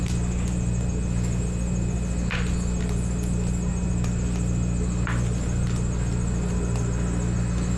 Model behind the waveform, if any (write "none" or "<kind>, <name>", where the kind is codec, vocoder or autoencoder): none